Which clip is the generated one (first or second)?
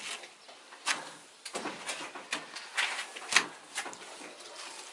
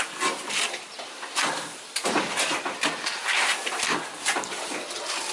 second